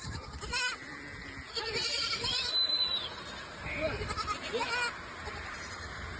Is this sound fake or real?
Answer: real